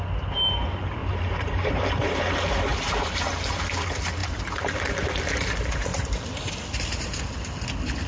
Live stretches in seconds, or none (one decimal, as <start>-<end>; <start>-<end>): 0.0-1.0; 2.3-2.7; 3.5-4.2; 4.8-5.9; 6.5-8.1